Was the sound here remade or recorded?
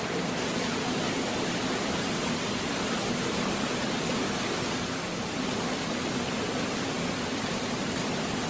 remade